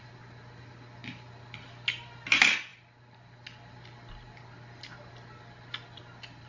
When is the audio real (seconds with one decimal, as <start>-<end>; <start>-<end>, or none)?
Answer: 0.0-6.5